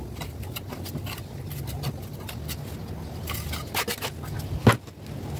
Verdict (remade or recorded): recorded